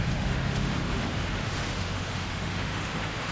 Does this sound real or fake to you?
fake